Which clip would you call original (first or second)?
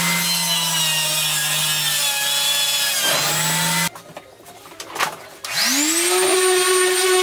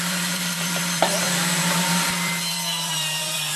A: first